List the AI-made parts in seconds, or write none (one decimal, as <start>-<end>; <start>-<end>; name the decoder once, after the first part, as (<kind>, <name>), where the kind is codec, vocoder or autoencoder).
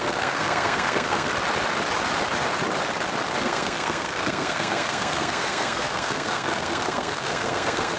0.0-1.3 (codec, SNAC); 3.4-8.0